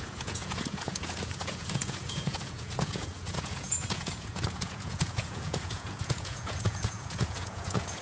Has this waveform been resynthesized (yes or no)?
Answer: yes